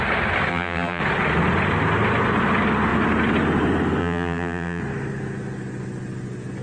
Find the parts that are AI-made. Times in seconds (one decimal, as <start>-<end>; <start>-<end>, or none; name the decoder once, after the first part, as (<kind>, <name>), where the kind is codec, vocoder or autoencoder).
0.5-1.0 (vocoder, BigVGAN v2); 4.0-4.8